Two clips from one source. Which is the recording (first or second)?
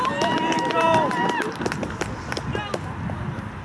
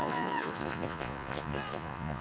first